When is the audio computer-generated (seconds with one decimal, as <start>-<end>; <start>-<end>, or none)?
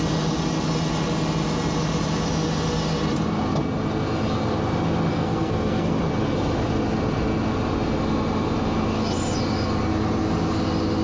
5.1-6.0